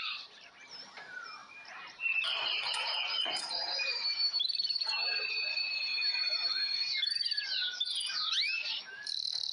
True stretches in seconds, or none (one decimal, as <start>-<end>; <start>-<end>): 7.6-8.7